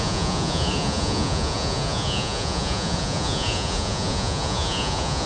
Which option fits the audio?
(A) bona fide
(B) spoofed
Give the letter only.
B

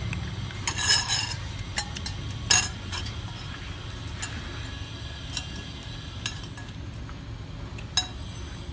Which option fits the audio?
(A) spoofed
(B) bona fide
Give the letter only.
B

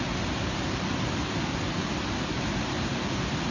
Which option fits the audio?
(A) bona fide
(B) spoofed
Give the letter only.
A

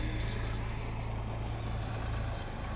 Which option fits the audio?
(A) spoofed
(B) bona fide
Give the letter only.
B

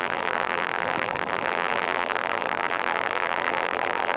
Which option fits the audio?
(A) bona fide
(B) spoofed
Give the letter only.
B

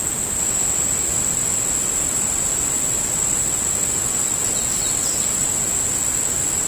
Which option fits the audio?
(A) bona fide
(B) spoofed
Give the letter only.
A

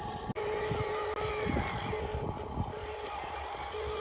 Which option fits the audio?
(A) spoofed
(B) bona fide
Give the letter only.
B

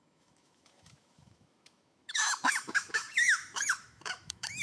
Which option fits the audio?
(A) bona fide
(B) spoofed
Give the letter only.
B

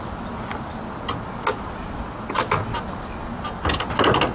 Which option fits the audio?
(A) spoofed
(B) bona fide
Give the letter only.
B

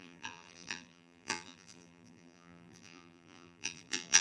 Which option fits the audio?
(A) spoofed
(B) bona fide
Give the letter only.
A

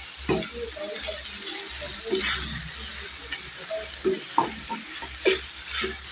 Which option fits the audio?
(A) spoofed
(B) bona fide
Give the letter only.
B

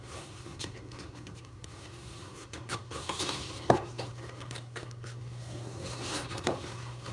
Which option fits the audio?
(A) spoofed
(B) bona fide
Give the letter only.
A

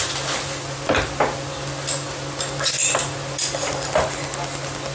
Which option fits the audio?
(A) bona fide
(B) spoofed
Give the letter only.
A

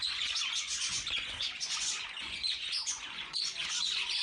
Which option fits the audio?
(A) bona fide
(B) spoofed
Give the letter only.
B